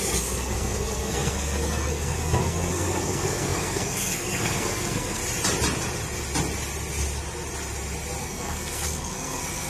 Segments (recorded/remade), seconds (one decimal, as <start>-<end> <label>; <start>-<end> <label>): 0.0-5.2 remade; 5.2-8.2 recorded; 8.2-9.7 remade